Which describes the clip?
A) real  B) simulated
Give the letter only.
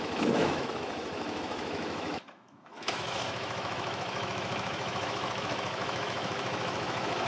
B